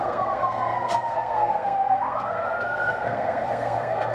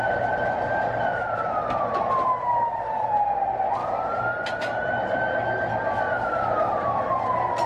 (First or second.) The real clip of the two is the second